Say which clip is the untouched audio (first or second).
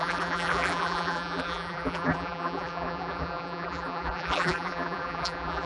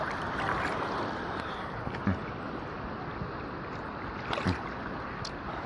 second